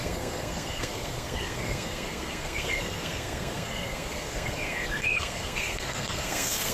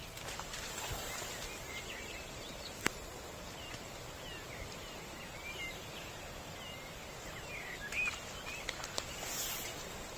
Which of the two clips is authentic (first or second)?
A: second